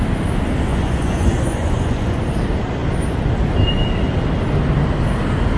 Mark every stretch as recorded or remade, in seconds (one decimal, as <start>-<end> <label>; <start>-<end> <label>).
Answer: 0.0-0.7 recorded; 0.7-2.2 remade; 2.2-5.6 recorded